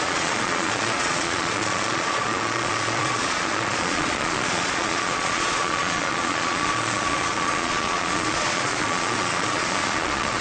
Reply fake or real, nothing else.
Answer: fake